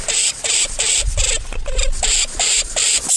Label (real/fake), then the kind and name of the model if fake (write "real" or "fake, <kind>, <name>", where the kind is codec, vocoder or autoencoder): real